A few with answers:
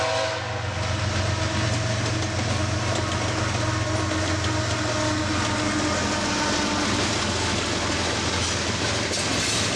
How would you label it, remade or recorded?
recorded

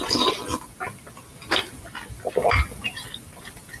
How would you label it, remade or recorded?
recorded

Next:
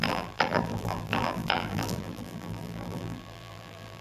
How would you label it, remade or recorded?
remade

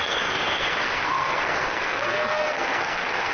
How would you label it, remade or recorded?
remade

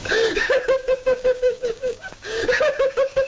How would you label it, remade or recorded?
remade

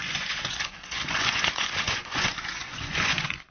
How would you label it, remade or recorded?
remade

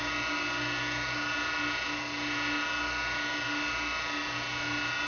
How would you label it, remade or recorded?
recorded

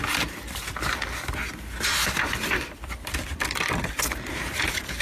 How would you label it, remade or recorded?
remade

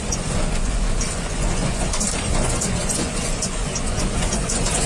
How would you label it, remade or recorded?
remade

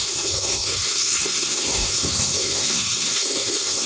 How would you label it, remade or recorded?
remade